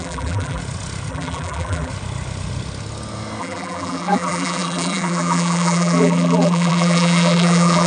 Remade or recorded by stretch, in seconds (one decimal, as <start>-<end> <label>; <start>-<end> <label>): 0.0-0.6 remade; 0.6-1.1 recorded; 1.1-1.9 remade; 1.9-3.4 recorded; 3.4-7.9 remade

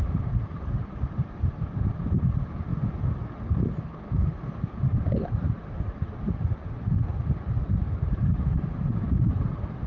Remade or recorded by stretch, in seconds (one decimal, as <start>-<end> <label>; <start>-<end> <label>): 0.0-2.7 remade; 2.7-4.6 recorded; 4.6-7.1 remade; 7.1-8.0 recorded; 8.0-9.9 remade

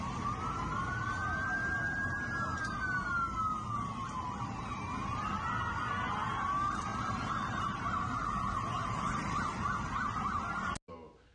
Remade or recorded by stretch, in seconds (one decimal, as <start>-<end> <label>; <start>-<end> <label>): 0.0-11.3 recorded

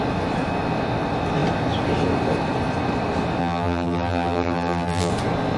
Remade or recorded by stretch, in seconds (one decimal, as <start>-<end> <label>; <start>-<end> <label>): 0.0-3.4 recorded; 3.4-5.1 remade; 5.1-5.6 recorded

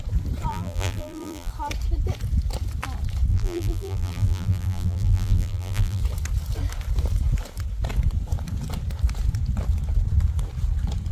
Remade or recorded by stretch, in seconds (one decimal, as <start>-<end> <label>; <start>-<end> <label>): 0.0-0.5 recorded; 0.5-1.5 remade; 1.5-3.3 recorded; 3.3-6.0 remade; 6.0-11.1 recorded

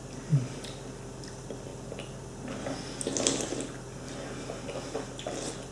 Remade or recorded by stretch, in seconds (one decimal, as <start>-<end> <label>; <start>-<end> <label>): 0.0-5.7 recorded